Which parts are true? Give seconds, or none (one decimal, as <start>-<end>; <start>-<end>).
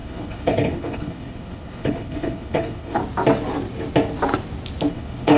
3.0-4.9